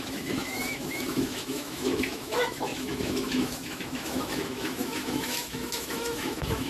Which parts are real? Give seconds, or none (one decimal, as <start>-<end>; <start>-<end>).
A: none